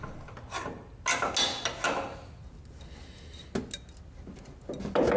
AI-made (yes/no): no